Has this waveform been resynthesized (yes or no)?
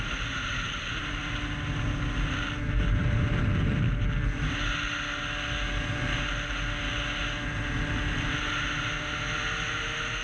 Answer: no